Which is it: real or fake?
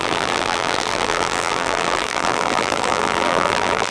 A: fake